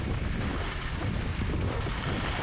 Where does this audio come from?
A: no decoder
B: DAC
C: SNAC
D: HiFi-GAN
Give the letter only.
A